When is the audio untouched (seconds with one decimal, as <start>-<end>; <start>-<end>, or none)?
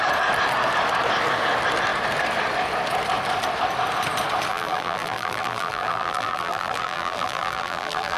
0.0-4.5